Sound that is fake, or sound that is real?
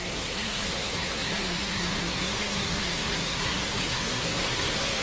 fake